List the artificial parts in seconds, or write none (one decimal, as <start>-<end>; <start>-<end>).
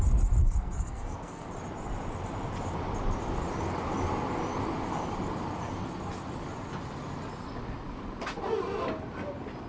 0.4-1.5